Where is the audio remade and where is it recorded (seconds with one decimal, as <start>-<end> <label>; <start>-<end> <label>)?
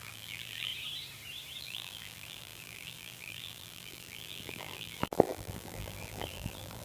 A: 0.0-0.7 remade; 0.7-1.6 recorded; 1.6-6.8 remade